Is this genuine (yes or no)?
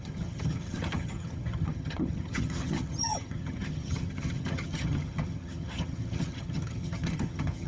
no